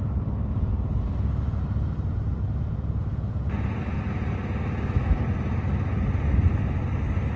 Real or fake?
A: real